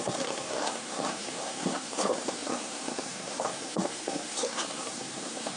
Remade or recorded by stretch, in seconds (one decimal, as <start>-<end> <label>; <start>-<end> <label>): 0.0-5.6 remade